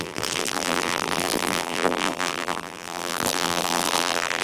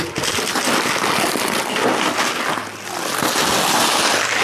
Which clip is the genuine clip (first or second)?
second